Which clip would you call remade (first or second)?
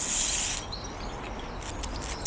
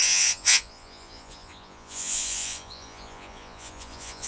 second